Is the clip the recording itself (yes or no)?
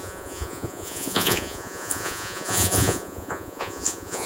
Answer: no